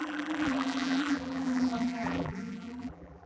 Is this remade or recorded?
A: remade